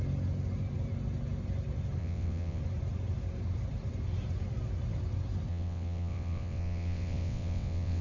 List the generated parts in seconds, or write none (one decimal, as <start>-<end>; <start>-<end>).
2.0-2.6; 5.5-8.0